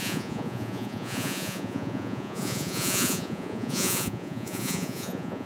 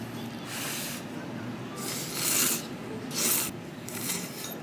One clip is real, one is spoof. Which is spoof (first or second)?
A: first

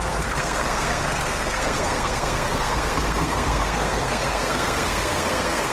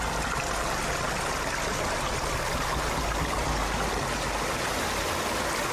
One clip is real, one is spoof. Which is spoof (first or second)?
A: first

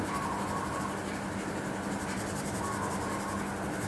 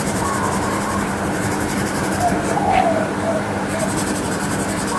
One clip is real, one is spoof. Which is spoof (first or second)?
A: second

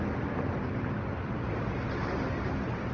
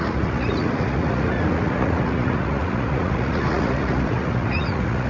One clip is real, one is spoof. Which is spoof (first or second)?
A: second